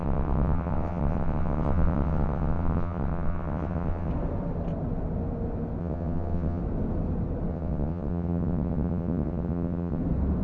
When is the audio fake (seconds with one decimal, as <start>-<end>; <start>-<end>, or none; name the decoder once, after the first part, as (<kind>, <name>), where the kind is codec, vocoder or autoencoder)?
0.0-4.1 (vocoder, WaveNeXt); 5.8-6.6; 7.5-10.0